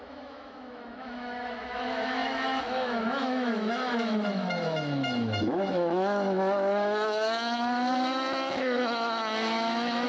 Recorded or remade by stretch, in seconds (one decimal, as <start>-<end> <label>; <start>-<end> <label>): 0.0-10.1 remade